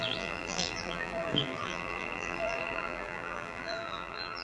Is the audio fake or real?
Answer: fake